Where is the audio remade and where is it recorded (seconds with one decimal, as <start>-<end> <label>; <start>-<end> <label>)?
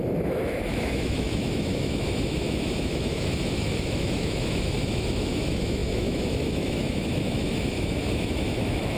0.0-9.0 remade